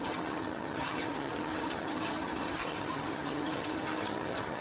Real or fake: fake